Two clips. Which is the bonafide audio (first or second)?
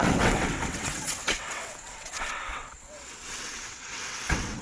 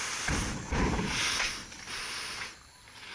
second